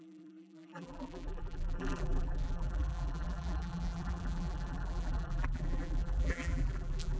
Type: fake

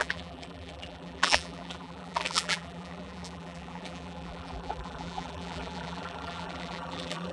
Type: fake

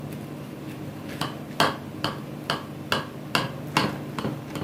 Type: real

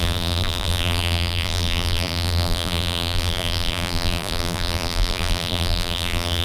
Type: fake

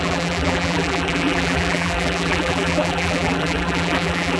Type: fake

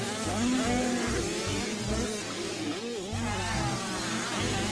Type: real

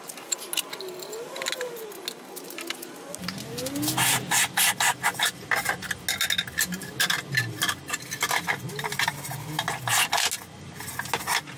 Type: real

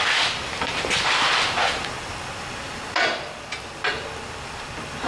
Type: real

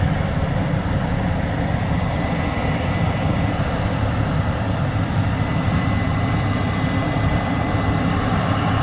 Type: fake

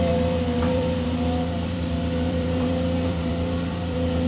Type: fake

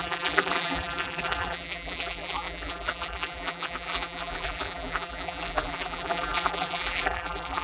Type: fake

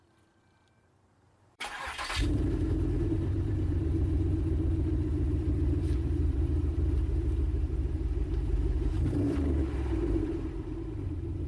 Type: fake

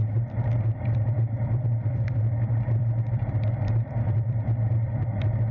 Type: fake